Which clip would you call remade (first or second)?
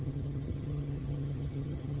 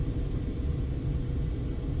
first